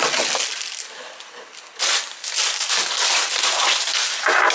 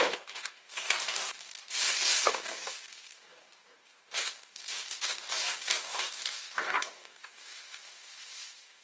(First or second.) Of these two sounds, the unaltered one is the first